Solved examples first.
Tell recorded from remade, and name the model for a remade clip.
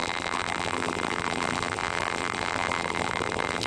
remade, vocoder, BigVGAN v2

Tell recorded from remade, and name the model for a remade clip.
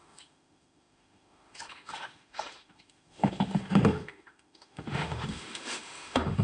remade, autoencoder, DAC-VAE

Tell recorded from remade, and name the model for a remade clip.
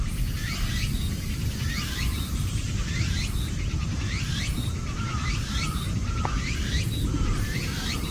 remade, vocoder, BigVGAN v2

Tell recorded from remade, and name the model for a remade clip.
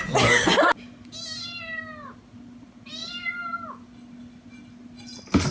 recorded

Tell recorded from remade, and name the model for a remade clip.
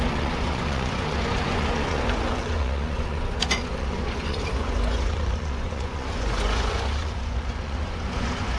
remade, vocoder, Vocos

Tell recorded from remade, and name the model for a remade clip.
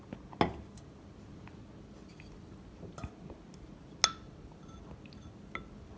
recorded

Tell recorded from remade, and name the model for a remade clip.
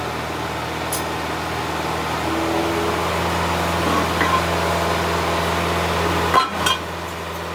recorded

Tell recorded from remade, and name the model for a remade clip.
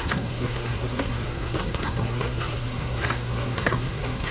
remade, codec, SNAC